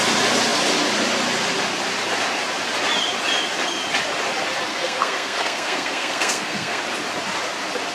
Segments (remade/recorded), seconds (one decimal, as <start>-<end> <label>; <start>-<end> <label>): 0.0-4.7 recorded; 4.7-6.8 remade; 6.8-7.9 recorded